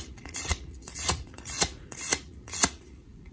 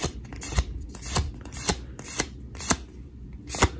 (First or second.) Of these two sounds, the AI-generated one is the first